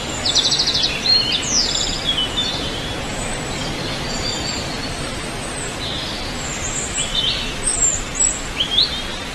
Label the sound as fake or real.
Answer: real